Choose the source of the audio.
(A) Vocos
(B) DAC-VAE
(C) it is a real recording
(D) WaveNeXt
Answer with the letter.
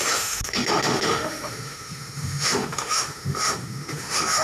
B